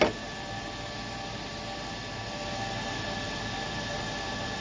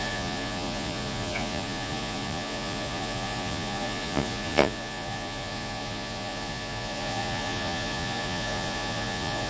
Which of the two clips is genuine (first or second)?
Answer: first